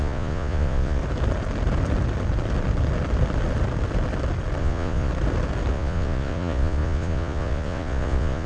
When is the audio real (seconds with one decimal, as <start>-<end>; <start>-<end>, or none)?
1.0-4.6; 5.1-5.7